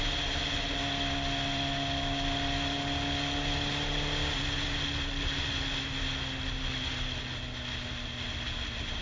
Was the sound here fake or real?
real